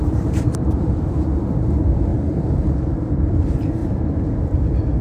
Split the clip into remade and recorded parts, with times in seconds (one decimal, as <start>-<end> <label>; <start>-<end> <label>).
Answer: 0.0-3.8 remade; 3.8-4.4 recorded; 4.4-5.0 remade